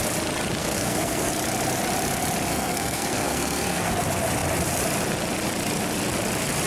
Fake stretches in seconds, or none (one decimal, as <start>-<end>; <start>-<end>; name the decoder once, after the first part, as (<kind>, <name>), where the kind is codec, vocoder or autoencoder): 0.6-1.3 (codec, SNAC); 2.5-3.9